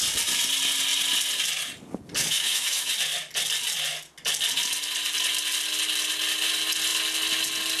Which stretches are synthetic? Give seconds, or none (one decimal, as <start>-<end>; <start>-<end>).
2.2-2.9